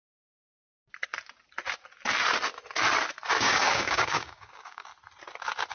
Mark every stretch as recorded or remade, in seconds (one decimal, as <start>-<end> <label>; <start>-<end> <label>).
0.0-3.4 recorded; 3.4-4.9 remade; 4.9-5.7 recorded